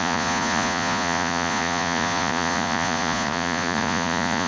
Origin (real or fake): fake